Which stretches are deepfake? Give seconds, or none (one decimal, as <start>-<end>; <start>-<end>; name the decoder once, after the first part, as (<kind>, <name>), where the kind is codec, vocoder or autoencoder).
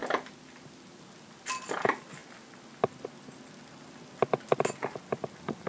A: none